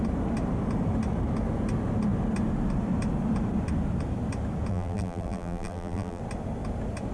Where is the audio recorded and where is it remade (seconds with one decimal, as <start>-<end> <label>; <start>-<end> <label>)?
0.0-4.7 recorded; 4.7-6.2 remade; 6.2-7.1 recorded